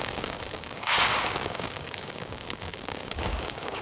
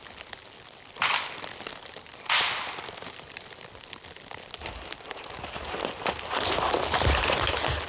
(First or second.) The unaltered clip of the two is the second